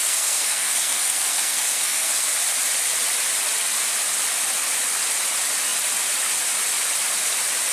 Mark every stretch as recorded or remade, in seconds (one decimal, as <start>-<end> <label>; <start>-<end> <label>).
0.0-2.3 remade; 2.3-7.7 recorded